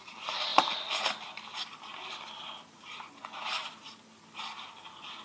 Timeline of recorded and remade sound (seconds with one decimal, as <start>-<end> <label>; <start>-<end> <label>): 0.0-5.2 recorded